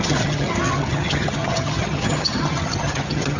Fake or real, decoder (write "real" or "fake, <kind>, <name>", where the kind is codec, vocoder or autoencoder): fake, vocoder, HiFi-GAN